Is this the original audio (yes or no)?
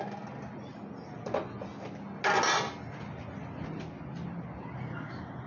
yes